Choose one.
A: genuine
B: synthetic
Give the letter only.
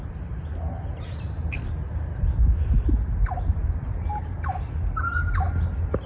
A